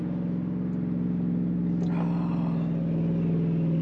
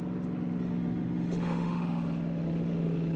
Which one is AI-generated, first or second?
second